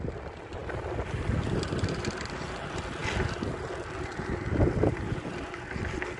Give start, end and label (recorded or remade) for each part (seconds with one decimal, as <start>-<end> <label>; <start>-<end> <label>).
0.0-6.2 recorded